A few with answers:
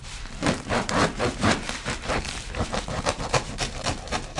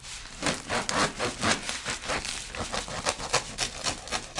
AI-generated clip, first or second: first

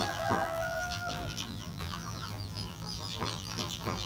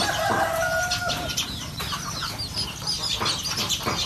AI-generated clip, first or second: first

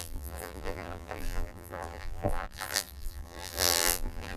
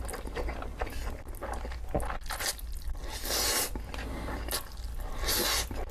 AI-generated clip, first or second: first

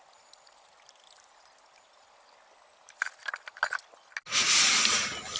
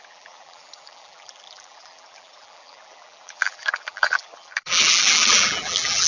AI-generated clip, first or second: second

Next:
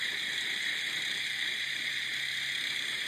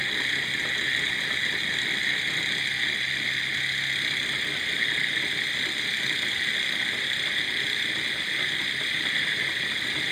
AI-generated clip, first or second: first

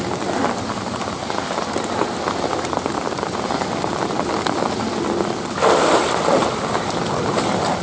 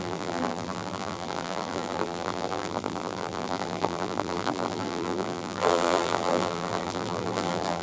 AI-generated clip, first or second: second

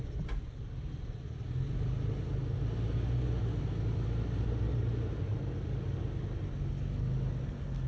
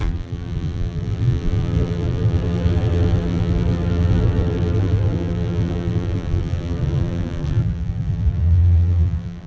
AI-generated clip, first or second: second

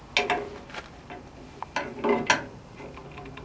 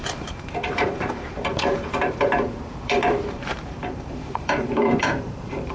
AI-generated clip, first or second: second